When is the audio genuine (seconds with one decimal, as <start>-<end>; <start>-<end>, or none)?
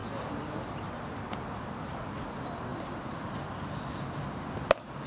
0.0-5.1